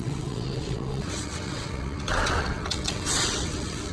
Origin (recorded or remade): remade